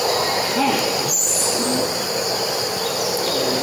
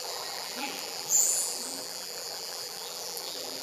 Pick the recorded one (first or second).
first